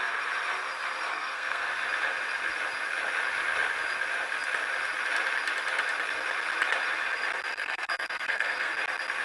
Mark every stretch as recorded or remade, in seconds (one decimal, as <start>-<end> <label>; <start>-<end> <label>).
0.0-1.1 recorded; 1.1-1.7 remade; 1.7-7.5 recorded; 7.5-8.7 remade; 8.7-9.2 recorded